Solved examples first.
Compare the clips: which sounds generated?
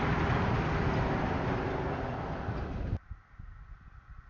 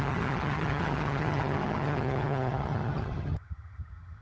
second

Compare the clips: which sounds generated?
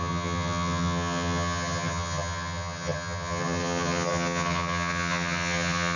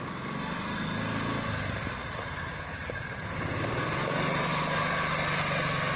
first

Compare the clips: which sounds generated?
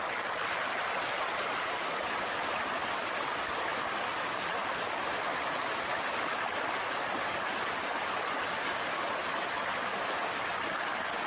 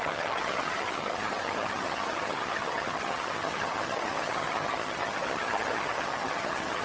second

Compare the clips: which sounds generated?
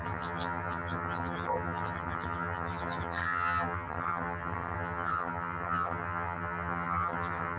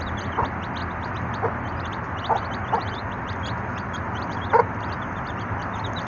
first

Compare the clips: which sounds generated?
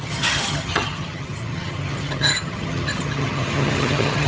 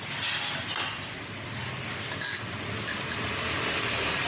first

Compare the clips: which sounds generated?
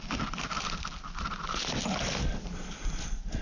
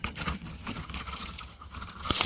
second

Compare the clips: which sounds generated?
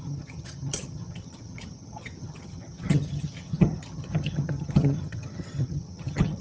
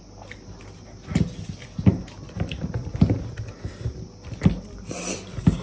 first